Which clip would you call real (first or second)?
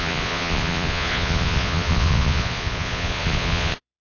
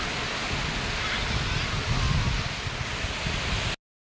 second